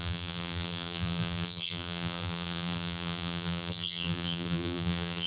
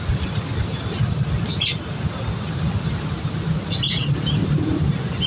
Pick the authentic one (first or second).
second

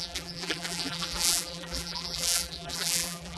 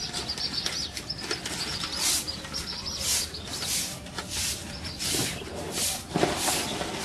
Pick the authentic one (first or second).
second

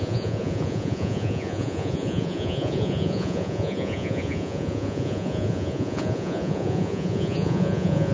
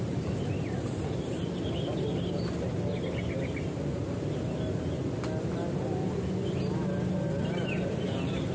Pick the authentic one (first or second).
second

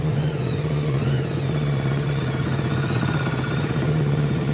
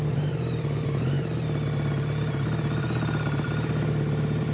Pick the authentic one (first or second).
second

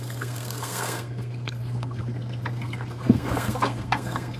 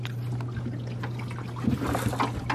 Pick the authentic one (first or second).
second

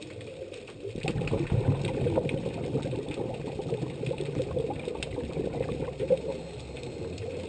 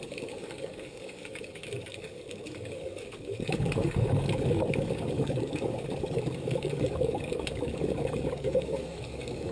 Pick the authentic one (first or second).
first